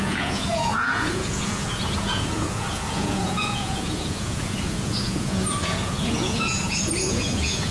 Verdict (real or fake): fake